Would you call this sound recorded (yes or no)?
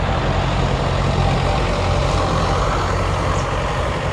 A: yes